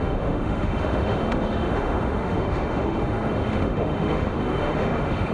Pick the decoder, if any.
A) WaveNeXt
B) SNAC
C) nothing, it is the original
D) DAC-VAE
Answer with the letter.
D